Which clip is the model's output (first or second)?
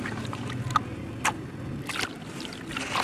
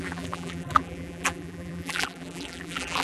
second